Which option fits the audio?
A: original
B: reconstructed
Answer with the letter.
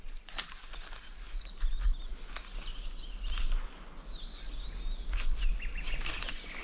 A